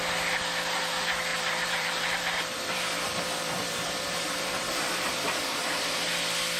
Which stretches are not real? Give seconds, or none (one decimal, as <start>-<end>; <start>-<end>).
1.3-5.1

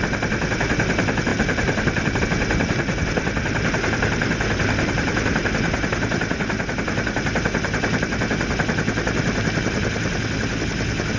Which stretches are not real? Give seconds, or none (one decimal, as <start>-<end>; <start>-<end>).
1.3-2.2

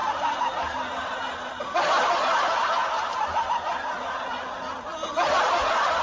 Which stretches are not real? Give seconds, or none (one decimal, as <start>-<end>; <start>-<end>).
none

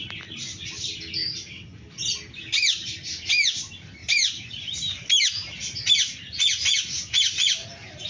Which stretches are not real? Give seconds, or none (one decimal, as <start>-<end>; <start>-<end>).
none